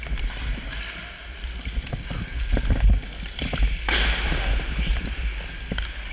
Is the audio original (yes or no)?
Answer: yes